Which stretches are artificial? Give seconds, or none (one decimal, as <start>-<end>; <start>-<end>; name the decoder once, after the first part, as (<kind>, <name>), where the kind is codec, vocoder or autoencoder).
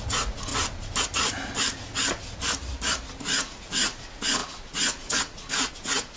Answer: 0.0-0.5 (vocoder, Vocos); 3.2-6.2